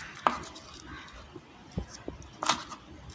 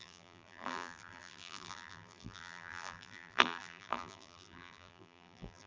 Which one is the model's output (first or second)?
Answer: second